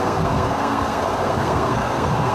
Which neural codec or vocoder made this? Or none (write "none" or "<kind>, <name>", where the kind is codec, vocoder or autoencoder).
codec, SNAC